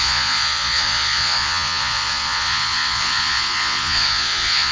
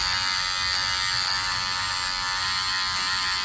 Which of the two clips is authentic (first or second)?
second